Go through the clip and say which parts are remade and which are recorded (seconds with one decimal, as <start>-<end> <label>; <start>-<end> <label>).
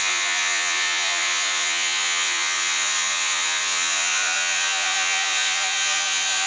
0.0-6.5 remade